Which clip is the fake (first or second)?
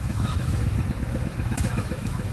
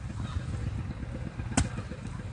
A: first